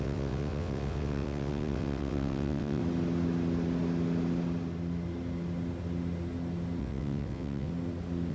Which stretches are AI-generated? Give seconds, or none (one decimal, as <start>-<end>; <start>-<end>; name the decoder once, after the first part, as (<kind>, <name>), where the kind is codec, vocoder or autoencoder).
0.0-2.8 (vocoder, WaveNeXt); 6.8-7.7